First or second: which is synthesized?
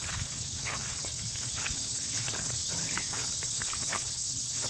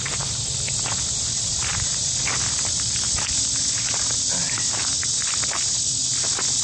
first